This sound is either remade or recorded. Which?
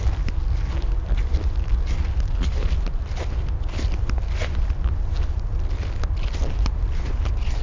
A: recorded